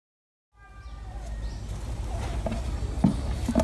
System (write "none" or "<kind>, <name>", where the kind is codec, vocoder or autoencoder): none